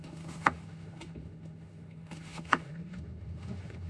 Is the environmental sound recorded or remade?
remade